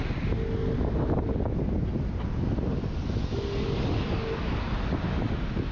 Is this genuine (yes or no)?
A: yes